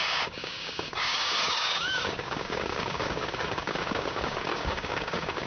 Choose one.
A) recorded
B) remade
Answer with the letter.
B